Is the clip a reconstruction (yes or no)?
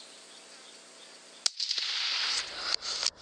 no